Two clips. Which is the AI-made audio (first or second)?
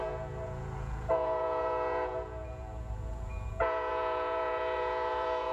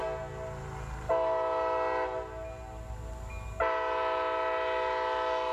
first